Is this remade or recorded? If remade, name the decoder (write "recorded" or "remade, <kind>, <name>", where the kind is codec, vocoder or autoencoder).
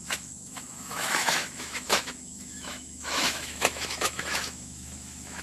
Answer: remade, autoencoder, DAC-VAE